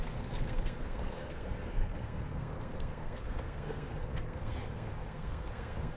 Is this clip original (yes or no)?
no